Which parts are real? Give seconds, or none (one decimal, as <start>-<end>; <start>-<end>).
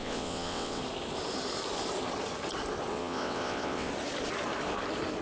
0.8-2.9; 3.9-5.2